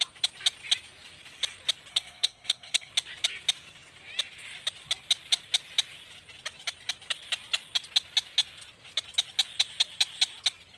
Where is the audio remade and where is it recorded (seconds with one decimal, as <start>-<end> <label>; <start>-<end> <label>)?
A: 0.0-1.9 recorded; 1.9-2.9 remade; 2.9-10.8 recorded